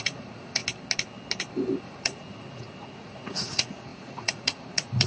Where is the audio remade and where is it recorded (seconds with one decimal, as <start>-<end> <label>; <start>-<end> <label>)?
0.0-0.6 remade; 0.6-1.8 recorded; 1.8-5.1 remade